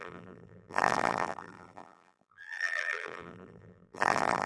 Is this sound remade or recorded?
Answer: remade